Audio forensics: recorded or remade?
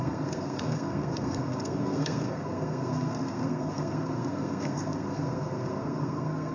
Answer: remade